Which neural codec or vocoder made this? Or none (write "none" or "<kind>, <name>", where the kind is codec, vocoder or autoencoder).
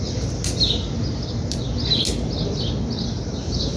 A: none